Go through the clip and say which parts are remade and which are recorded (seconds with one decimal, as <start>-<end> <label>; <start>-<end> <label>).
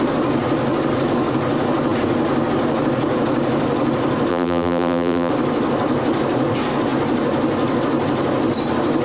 0.0-4.3 recorded; 4.3-5.3 remade; 5.3-9.0 recorded